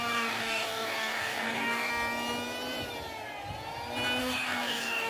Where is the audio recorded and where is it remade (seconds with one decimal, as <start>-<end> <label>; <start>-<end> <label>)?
0.0-1.9 remade; 1.9-4.2 recorded; 4.2-5.1 remade